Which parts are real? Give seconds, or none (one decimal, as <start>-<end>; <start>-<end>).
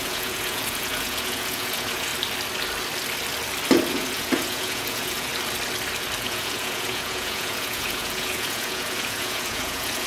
2.1-3.9; 5.3-6.2